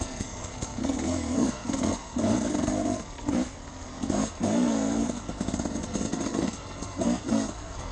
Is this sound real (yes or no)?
no